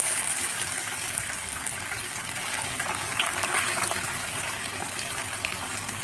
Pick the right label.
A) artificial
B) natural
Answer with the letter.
A